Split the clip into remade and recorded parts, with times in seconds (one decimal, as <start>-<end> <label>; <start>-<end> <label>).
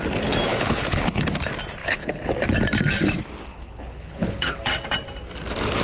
0.0-0.5 recorded; 0.5-1.3 remade; 1.3-1.8 recorded; 1.8-2.3 remade; 2.3-3.5 recorded; 3.5-4.6 remade; 4.6-5.8 recorded